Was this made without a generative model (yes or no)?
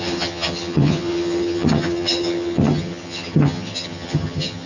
no